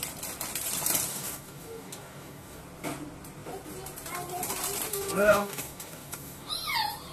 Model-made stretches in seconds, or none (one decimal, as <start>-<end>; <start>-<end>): 1.1-2.6; 4.9-6.5